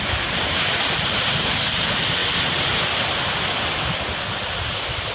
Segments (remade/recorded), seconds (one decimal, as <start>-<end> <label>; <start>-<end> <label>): 0.0-5.1 recorded